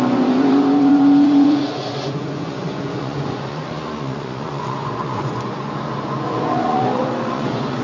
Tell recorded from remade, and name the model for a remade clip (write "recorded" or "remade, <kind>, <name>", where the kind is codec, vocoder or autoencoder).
remade, vocoder, Vocos